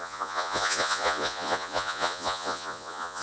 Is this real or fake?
fake